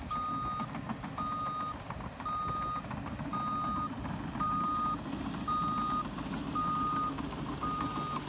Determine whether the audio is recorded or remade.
recorded